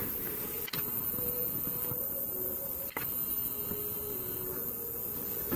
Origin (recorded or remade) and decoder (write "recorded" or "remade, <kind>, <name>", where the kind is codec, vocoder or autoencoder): recorded